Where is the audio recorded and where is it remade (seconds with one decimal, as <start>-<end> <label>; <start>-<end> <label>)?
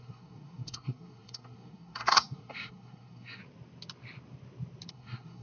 0.0-3.4 remade; 3.4-4.9 recorded; 4.9-5.4 remade